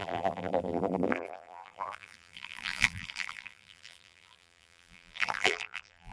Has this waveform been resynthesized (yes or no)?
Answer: yes